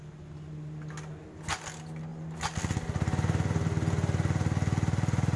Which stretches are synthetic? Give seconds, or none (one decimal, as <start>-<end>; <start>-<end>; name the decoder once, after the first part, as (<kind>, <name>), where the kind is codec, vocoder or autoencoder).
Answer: none

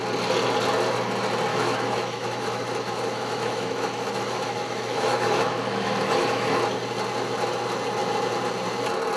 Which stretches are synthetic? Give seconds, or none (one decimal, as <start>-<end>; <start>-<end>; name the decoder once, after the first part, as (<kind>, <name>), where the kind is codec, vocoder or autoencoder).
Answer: 1.5-6.6 (autoencoder, DAC-VAE)

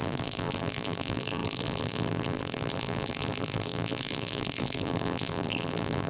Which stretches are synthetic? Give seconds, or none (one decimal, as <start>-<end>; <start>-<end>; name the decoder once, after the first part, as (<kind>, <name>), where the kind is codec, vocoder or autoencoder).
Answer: 0.0-6.1 (vocoder, BigVGAN v2)

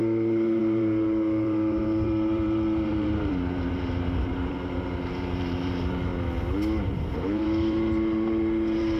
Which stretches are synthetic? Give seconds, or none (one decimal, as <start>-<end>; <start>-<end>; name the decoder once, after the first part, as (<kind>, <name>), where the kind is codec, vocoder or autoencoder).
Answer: 0.0-6.1 (vocoder, BigVGAN v2); 6.9-9.0